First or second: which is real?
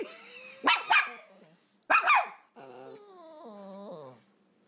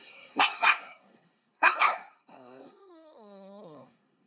first